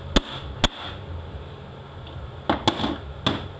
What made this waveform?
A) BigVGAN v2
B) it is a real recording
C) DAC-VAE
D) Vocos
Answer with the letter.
B